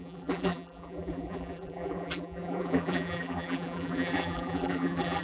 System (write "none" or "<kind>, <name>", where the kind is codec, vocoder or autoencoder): vocoder, BigVGAN v2